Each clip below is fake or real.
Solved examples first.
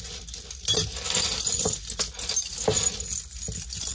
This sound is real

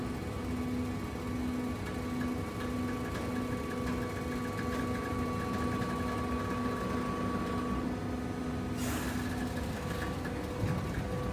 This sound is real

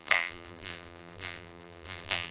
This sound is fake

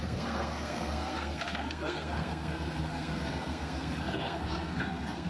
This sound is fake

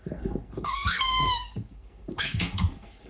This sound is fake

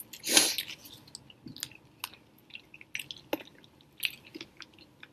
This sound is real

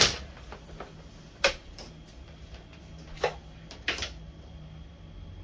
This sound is real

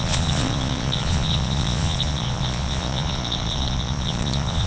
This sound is fake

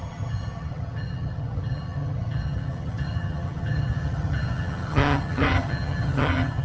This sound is fake